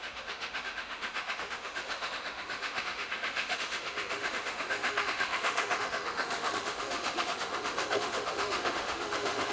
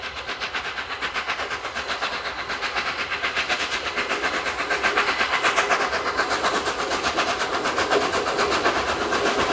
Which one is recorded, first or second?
second